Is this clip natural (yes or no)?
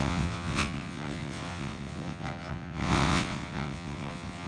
no